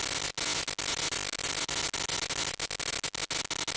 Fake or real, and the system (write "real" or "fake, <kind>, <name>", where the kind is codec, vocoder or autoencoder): real